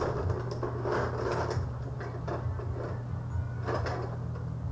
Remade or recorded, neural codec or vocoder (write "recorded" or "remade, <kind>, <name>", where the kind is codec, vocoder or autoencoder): recorded